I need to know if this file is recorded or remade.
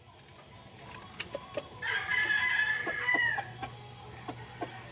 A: recorded